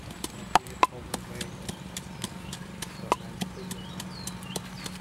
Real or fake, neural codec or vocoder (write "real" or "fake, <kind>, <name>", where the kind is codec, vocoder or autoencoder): real